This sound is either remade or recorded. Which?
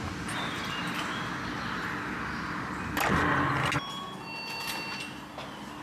recorded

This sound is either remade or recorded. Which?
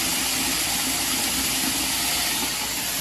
recorded